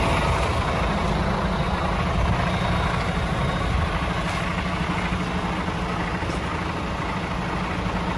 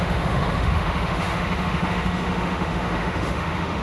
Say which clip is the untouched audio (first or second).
first